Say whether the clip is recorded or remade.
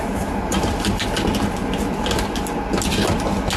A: recorded